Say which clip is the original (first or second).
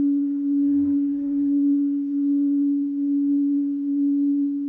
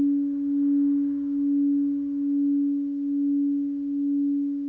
second